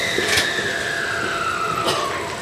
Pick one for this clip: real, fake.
real